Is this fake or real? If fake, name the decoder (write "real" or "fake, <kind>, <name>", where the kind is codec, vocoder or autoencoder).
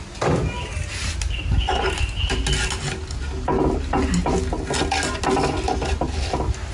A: real